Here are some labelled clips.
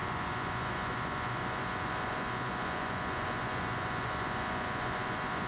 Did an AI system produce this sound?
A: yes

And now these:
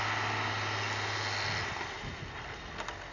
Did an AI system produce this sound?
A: no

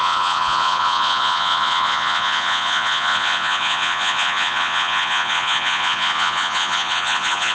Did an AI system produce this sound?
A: yes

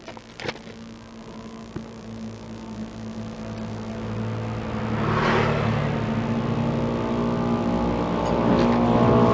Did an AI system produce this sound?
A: no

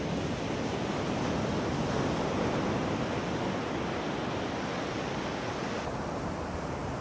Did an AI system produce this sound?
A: no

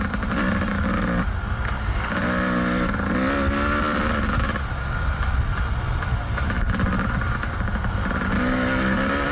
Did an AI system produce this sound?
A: no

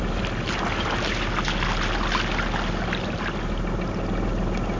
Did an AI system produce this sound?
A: no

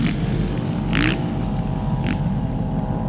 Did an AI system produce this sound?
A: no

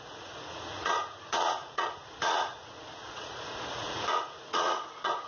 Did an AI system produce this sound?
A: yes